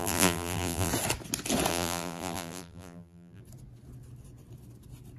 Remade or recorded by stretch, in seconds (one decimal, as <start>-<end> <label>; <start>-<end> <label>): 0.0-0.9 remade; 0.9-1.7 recorded; 1.7-3.4 remade; 3.4-5.2 recorded

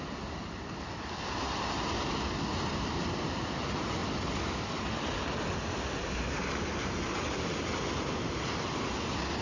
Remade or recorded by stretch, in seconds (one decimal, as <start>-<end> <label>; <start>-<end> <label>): 0.0-2.5 recorded; 2.5-3.6 remade; 3.6-9.4 recorded

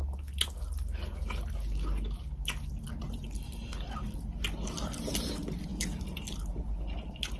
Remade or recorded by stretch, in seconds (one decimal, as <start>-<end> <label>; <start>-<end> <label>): 0.0-7.4 recorded